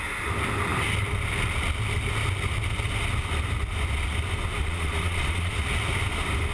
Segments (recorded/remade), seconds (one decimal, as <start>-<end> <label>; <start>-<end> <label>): 0.0-4.6 recorded; 4.6-5.5 remade; 5.5-6.5 recorded